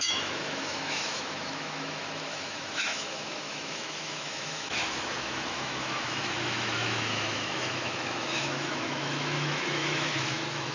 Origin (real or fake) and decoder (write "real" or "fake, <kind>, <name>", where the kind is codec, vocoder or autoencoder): fake, autoencoder, DAC-VAE